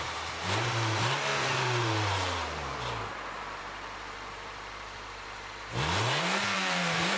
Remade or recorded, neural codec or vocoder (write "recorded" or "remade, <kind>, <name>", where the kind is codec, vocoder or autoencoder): remade, vocoder, BigVGAN v2